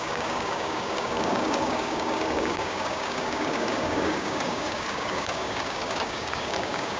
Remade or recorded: remade